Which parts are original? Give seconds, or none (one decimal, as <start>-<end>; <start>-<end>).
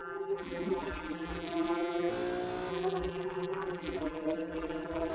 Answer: 2.1-2.7